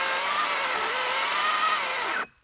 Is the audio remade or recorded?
recorded